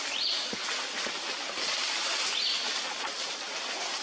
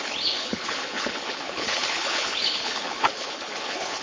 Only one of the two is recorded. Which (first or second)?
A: first